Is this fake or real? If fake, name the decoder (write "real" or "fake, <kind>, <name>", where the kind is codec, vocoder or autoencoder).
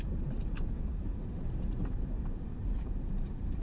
fake, vocoder, BigVGAN v2